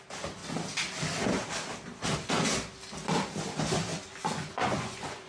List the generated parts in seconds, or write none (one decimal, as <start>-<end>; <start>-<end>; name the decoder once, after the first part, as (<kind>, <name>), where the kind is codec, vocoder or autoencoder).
3.9-5.3 (vocoder, Vocos)